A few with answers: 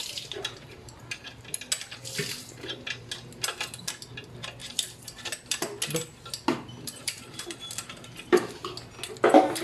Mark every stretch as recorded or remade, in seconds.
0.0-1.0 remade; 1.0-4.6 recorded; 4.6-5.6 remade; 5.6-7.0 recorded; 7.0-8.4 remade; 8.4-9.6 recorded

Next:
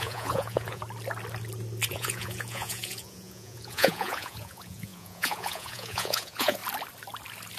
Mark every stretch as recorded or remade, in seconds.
0.0-0.8 remade; 0.8-1.9 recorded; 1.9-6.6 remade; 6.6-7.6 recorded

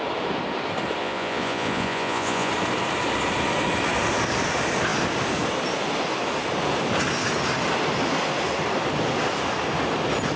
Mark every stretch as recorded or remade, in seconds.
0.0-1.0 recorded; 1.0-2.5 remade; 2.5-10.4 recorded

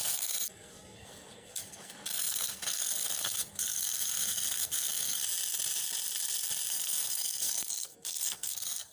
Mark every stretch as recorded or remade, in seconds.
0.0-5.2 remade; 5.2-6.7 recorded; 6.7-8.9 remade

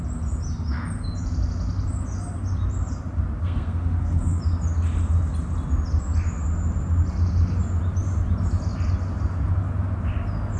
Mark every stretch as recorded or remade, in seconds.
0.0-3.4 recorded; 3.4-4.4 remade; 4.4-10.6 recorded

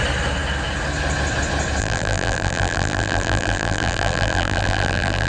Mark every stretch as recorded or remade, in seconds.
0.0-1.8 recorded; 1.8-5.3 remade